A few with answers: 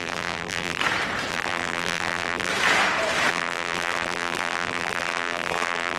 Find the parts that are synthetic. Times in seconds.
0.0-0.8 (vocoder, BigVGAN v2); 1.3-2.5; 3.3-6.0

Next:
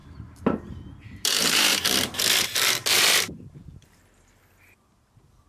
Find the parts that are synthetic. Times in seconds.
0.0-1.8 (vocoder, BigVGAN v2); 2.9-4.0

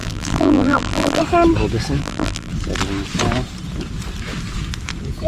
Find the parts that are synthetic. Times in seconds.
0.0-1.2 (vocoder, BigVGAN v2); 2.0-2.5

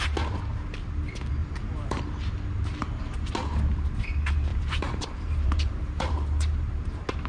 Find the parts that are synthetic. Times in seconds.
1.4-2.0 (vocoder, BigVGAN v2); 2.8-3.3; 4.5-6.7